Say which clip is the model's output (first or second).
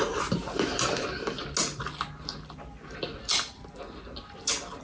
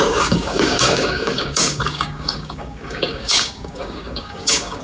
second